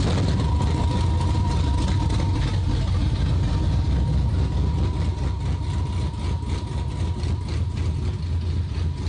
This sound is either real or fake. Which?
real